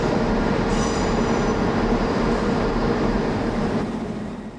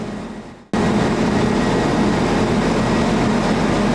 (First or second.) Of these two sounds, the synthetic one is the first